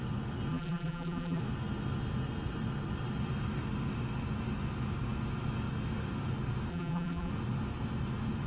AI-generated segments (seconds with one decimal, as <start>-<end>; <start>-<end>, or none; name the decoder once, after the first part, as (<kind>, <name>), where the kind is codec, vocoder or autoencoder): 0.5-1.4 (vocoder, BigVGAN v2); 6.7-7.3